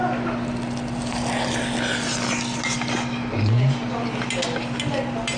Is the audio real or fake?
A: real